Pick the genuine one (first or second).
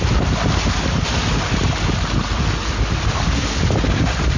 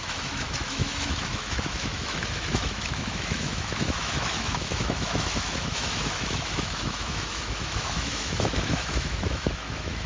first